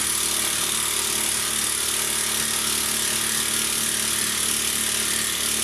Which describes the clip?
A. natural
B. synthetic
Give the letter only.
A